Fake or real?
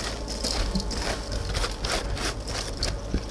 real